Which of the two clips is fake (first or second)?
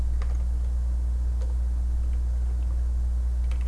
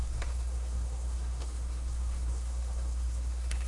second